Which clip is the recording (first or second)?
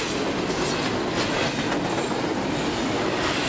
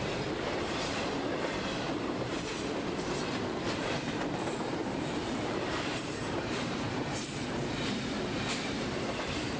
first